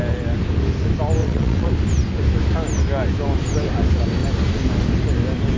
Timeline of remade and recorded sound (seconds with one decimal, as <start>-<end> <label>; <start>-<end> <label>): 0.0-1.2 recorded; 1.2-1.7 remade; 1.7-5.6 recorded